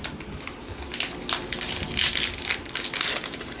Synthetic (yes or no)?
no